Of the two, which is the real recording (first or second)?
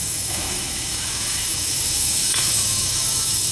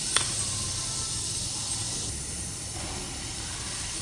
second